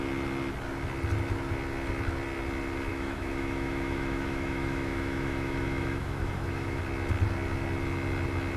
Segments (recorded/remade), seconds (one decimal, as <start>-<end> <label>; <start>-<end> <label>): 0.0-2.9 recorded; 2.9-6.8 remade; 6.8-8.6 recorded